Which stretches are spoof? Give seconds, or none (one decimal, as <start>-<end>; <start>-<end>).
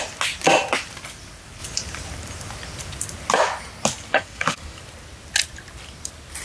4.1-4.8